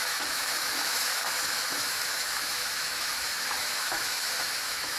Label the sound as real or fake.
fake